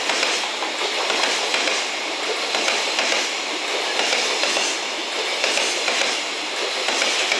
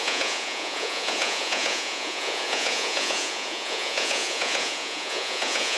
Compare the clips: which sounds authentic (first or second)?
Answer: first